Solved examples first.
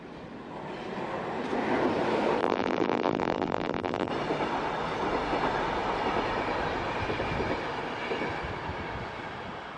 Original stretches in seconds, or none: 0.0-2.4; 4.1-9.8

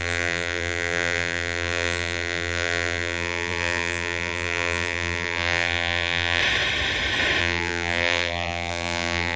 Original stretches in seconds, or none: 6.4-7.4

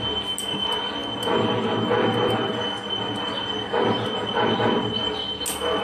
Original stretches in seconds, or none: 0.0-5.8

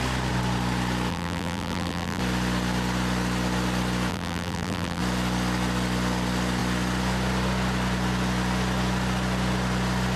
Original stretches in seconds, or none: 0.0-1.1; 2.2-4.1; 5.0-10.2